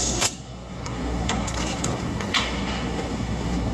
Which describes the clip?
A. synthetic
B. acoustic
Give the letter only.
A